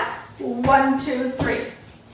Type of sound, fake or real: real